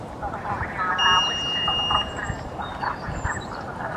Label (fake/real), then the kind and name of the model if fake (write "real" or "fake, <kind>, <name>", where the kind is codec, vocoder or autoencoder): real